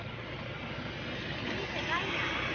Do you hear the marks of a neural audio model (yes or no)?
no